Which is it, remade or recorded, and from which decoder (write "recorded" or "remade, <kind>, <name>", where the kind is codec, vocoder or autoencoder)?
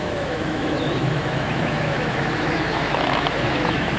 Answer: remade, autoencoder, DAC-VAE